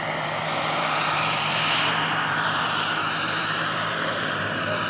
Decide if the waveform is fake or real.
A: fake